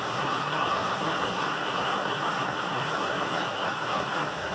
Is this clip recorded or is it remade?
remade